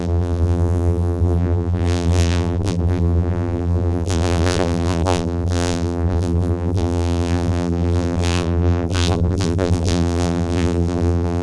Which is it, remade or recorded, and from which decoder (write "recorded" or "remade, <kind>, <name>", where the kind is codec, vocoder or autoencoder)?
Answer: remade, vocoder, BigVGAN v2